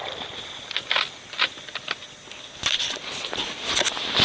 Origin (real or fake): real